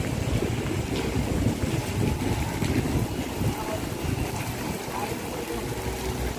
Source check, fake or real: real